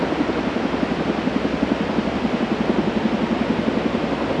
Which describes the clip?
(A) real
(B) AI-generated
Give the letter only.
A